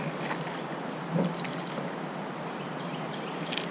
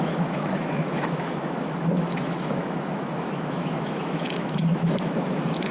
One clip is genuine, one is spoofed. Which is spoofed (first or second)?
second